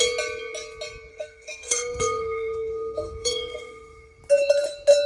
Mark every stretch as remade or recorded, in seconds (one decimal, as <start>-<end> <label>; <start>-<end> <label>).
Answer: 0.0-1.1 recorded; 1.1-4.2 remade; 4.2-5.1 recorded